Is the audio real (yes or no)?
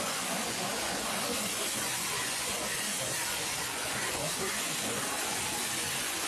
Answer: no